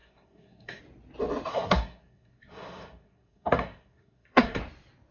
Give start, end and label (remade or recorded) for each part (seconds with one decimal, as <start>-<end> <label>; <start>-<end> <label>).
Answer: 0.0-0.8 remade; 0.8-1.5 recorded; 1.5-4.6 remade; 4.6-5.1 recorded